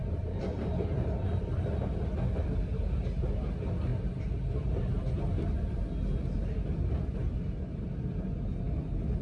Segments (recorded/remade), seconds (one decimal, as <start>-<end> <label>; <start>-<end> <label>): 0.0-1.7 remade; 1.7-9.2 recorded